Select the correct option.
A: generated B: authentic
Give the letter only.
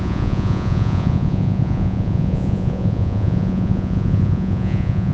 A